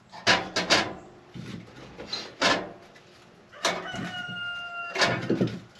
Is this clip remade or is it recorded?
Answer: recorded